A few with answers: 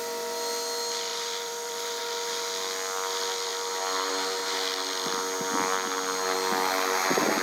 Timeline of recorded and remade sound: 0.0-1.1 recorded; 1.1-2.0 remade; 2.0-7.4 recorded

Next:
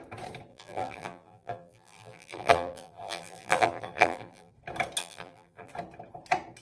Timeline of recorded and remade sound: 0.0-0.5 recorded; 0.5-4.5 remade; 4.5-5.0 recorded; 5.0-5.7 remade; 5.7-6.6 recorded

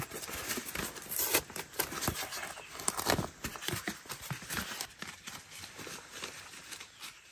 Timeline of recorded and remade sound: 0.0-7.3 recorded

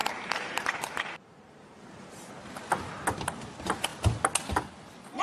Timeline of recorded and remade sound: 0.0-2.3 remade; 2.3-5.2 recorded

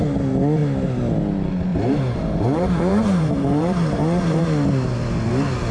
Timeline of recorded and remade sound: 0.0-1.7 recorded; 1.7-4.4 remade; 4.4-5.7 recorded

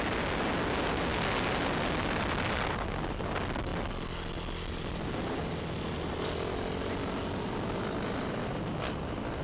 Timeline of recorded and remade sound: 0.0-9.4 recorded

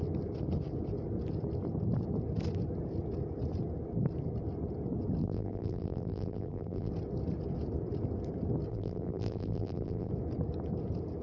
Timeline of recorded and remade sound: 0.0-5.2 recorded; 5.2-6.9 remade; 6.9-8.7 recorded; 8.7-10.1 remade; 10.1-11.2 recorded

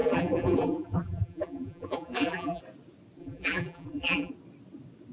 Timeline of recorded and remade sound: 0.0-2.6 remade; 2.6-3.2 recorded; 3.2-4.3 remade; 4.3-5.1 recorded